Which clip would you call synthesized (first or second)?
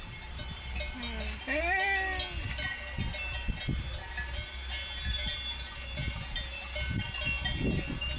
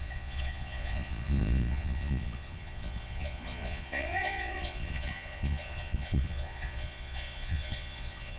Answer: second